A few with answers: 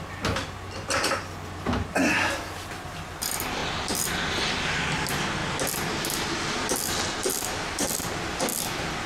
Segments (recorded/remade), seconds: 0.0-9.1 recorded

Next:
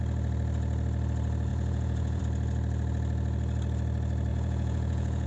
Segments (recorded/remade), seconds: 0.0-1.5 recorded; 1.5-2.2 remade; 2.2-4.3 recorded; 4.3-5.3 remade

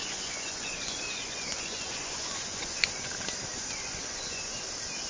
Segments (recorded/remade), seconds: 0.0-3.1 remade; 3.1-3.5 recorded; 3.5-4.6 remade; 4.6-5.1 recorded

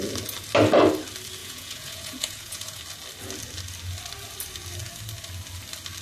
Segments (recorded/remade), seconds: 0.0-1.4 recorded; 1.4-2.8 remade; 2.8-6.0 recorded

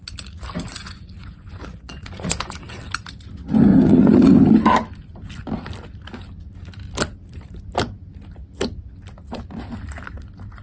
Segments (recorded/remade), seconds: 0.0-0.7 recorded; 0.7-2.8 remade; 2.8-3.7 recorded; 3.7-4.3 remade; 4.3-10.6 recorded

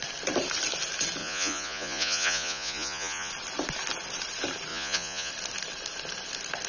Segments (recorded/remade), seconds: 0.0-1.2 recorded; 1.2-3.3 remade; 3.3-4.7 recorded; 4.7-5.3 remade; 5.3-6.7 recorded

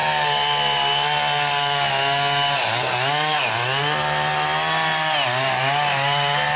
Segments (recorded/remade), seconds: 0.0-6.6 recorded